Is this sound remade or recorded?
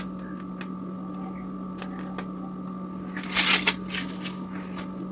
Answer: recorded